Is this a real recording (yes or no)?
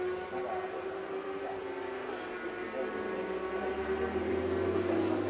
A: yes